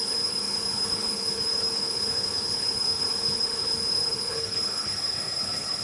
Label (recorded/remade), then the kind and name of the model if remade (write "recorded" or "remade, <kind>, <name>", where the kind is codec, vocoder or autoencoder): remade, codec, HILCodec